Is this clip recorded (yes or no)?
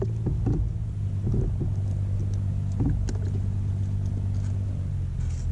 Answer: yes